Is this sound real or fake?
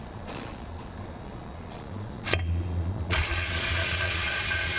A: fake